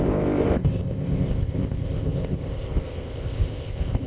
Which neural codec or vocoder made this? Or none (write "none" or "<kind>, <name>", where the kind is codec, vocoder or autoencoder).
codec, ZipCodec